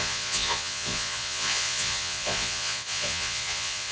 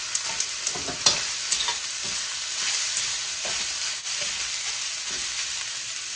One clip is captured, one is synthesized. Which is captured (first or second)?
second